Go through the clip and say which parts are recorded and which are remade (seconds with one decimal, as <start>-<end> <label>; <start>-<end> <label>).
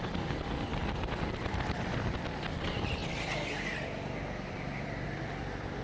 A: 0.0-3.0 remade; 3.0-4.5 recorded; 4.5-5.8 remade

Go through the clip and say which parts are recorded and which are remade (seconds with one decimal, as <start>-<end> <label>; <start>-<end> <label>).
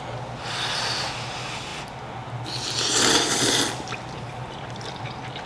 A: 0.0-5.5 recorded